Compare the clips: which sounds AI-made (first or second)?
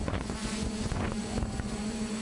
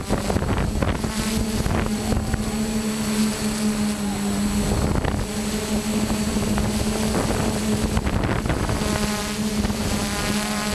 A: first